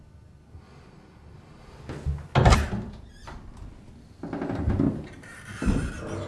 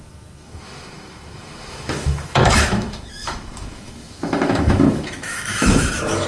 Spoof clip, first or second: second